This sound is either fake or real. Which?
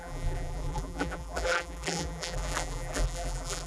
fake